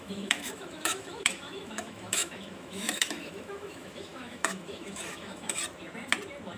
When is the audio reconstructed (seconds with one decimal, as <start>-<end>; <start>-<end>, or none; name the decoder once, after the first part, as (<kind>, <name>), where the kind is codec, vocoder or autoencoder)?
0.0-5.6 (autoencoder, DAC-VAE)